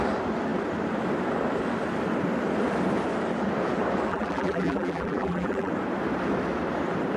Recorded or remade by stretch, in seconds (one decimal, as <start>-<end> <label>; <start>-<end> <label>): 0.0-4.1 recorded; 4.1-5.7 remade; 5.7-7.2 recorded